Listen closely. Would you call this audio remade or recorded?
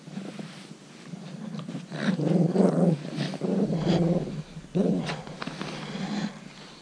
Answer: recorded